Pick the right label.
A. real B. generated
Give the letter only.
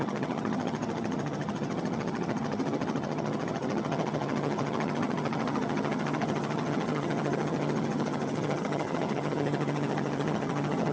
B